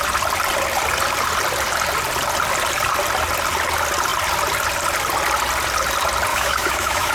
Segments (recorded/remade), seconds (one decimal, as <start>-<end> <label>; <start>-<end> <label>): 0.0-6.3 recorded; 6.3-7.1 remade